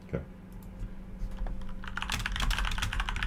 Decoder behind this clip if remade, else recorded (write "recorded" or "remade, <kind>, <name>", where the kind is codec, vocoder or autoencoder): recorded